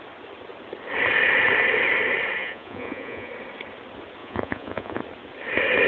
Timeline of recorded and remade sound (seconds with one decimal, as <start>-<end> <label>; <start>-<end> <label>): 0.0-2.4 recorded; 2.4-3.3 remade; 3.3-4.2 recorded; 4.2-5.0 remade; 5.0-5.9 recorded